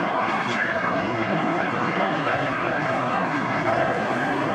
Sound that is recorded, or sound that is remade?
remade